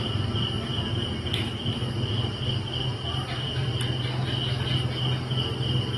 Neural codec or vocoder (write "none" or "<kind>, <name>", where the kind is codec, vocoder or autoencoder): none